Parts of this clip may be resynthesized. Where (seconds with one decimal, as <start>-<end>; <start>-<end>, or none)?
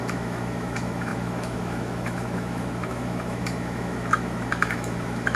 0.0-5.4